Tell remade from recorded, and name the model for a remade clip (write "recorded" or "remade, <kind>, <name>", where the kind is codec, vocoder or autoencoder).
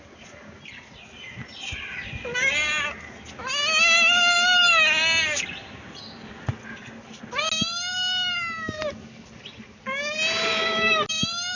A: recorded